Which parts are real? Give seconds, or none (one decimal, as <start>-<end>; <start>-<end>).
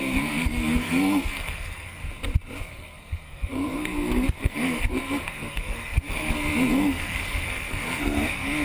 2.0-2.6